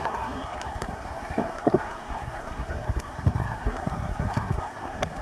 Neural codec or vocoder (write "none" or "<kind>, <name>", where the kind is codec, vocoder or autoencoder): codec, SNAC